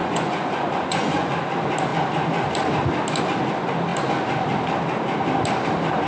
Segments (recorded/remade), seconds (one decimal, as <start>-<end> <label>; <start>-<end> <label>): 0.0-1.3 remade; 1.3-6.1 recorded